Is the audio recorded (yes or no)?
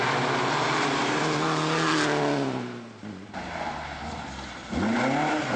yes